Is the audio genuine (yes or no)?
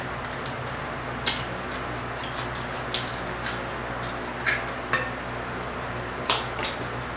yes